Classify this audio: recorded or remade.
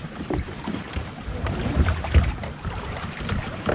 remade